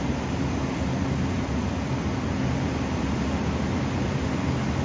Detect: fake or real real